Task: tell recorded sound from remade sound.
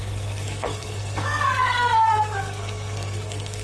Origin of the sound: remade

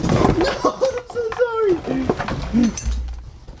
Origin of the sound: recorded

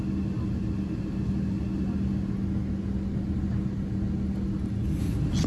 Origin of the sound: recorded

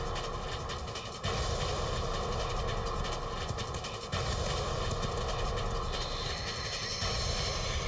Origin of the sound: recorded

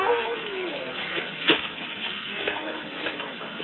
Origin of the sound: remade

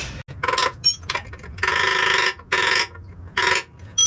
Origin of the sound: recorded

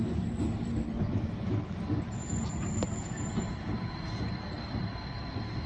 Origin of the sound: recorded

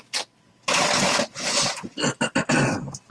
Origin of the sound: recorded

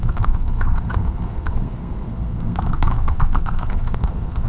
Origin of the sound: remade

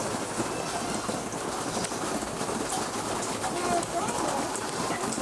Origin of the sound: recorded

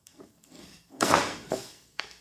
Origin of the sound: remade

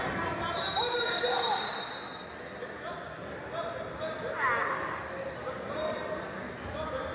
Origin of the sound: recorded